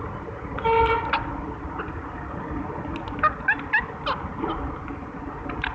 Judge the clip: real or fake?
real